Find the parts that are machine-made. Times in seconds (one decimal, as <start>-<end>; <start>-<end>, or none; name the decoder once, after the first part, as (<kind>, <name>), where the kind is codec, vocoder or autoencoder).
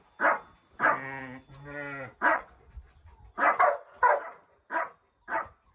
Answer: 2.3-3.2 (vocoder, Vocos)